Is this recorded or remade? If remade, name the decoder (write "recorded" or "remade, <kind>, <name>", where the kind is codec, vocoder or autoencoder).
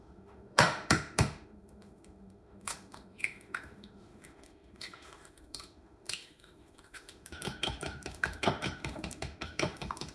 remade, autoencoder, DAC-VAE